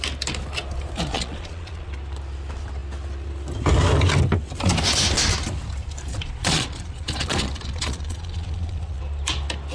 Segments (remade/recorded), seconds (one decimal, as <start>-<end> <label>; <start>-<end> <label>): 0.0-1.1 recorded; 1.1-1.9 remade; 1.9-6.1 recorded; 6.1-9.0 remade; 9.0-9.7 recorded